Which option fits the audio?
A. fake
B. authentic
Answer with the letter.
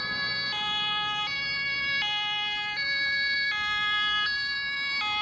B